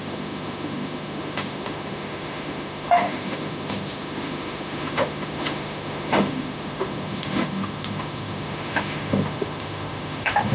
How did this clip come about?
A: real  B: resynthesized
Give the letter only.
B